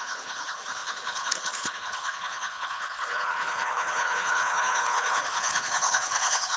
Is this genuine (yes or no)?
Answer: no